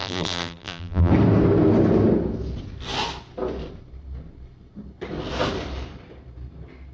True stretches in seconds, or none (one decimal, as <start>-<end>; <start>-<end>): 1.1-6.9